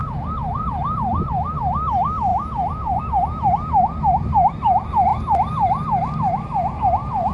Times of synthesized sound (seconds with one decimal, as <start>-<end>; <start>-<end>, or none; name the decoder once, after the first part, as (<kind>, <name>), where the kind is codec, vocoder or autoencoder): 0.0-1.3 (vocoder, Vocos); 2.3-3.0